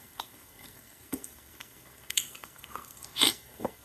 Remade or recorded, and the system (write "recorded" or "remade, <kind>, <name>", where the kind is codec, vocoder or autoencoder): remade, codec, SNAC